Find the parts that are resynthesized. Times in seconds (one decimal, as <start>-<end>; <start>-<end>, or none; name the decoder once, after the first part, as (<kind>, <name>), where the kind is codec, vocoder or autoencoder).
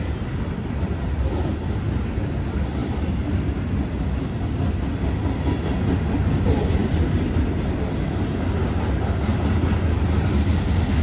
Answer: none